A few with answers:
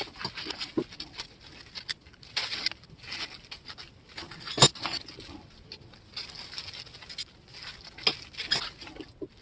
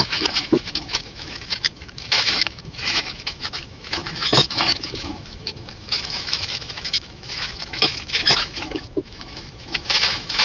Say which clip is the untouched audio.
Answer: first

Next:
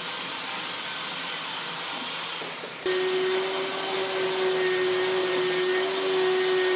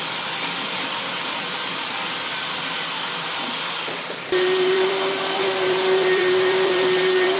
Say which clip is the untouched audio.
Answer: first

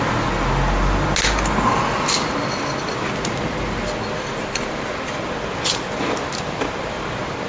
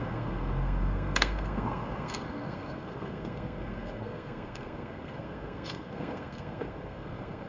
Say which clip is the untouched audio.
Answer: first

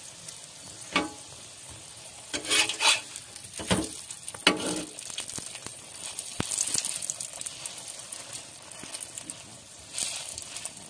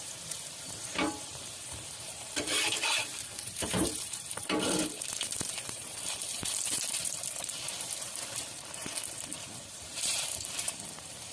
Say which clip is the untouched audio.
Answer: first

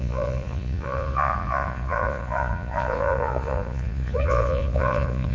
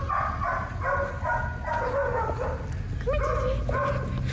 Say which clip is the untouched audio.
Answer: second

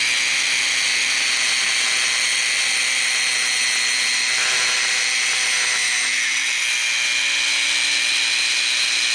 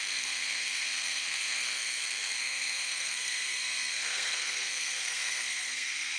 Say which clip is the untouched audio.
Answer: first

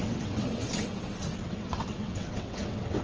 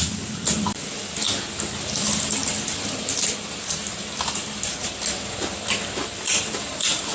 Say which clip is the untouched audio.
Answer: second